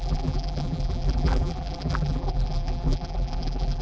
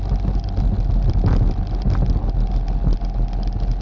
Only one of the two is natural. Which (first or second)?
second